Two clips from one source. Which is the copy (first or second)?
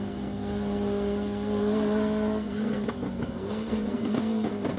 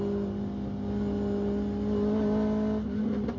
first